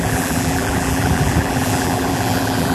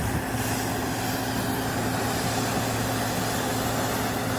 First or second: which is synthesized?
first